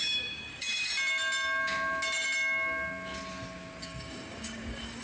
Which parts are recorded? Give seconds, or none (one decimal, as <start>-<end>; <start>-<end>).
0.9-3.8